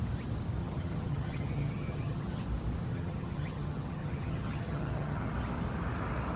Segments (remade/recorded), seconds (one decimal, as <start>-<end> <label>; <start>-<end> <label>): 0.0-0.6 recorded; 0.6-2.4 remade; 2.4-2.9 recorded; 2.9-5.3 remade; 5.3-6.4 recorded